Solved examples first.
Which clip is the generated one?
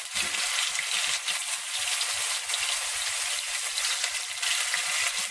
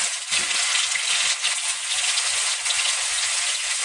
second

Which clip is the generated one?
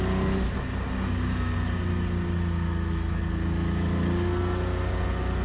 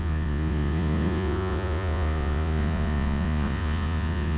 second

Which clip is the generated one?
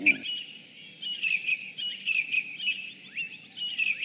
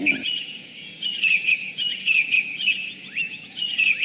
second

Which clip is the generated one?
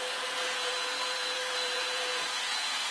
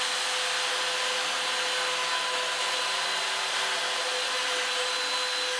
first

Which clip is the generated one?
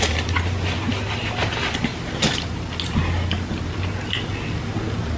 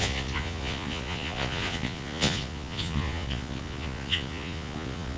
second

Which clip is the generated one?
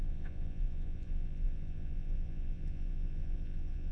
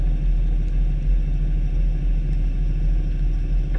first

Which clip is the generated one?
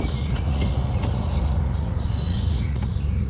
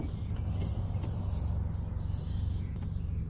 first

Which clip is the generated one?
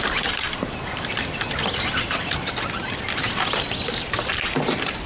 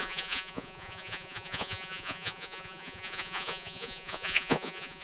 second